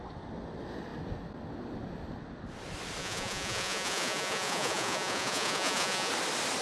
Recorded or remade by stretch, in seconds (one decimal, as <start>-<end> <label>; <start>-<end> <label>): 0.0-3.0 recorded; 3.0-6.1 remade; 6.1-6.6 recorded